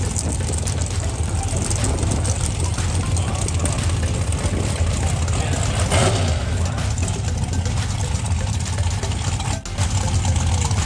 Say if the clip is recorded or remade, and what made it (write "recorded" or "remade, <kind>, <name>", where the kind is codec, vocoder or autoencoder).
recorded